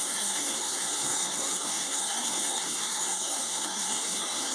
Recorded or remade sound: remade